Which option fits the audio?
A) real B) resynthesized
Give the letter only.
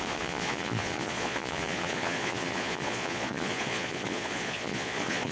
B